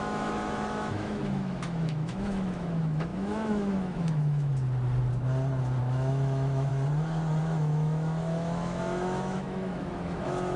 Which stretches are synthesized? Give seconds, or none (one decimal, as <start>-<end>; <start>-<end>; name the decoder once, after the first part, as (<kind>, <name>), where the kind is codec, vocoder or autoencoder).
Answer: 0.0-4.5 (autoencoder, DAC-VAE); 5.8-6.7; 7.4-10.6